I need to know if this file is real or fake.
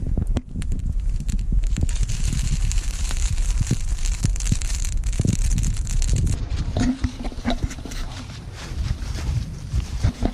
fake